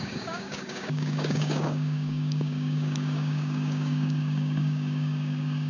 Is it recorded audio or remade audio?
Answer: remade